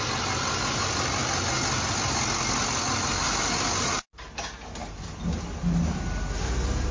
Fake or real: real